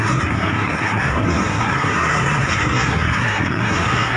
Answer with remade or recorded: remade